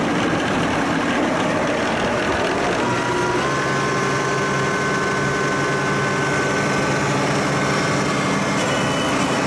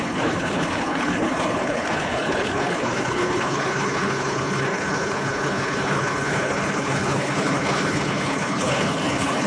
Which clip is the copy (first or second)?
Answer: second